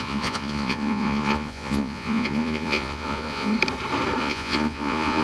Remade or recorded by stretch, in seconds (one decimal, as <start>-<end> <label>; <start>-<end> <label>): 0.0-3.5 remade; 3.5-4.2 recorded; 4.2-5.2 remade